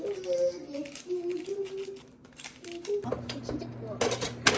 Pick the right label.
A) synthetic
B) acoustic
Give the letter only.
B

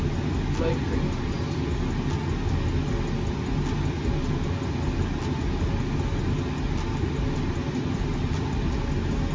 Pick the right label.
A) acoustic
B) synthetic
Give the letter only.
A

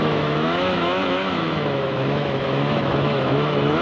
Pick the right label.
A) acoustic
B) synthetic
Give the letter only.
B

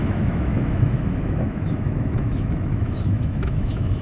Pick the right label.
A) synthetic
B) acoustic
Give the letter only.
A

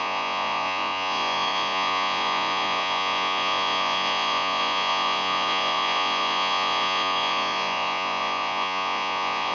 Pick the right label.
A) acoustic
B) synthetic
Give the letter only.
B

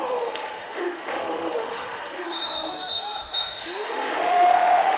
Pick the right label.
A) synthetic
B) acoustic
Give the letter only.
A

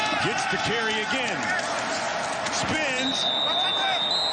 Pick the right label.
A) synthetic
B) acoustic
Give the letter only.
B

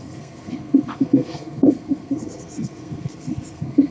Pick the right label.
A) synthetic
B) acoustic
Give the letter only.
A